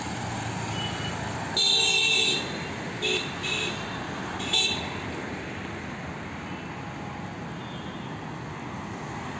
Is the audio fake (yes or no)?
no